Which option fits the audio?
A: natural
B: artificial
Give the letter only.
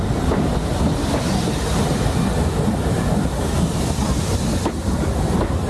A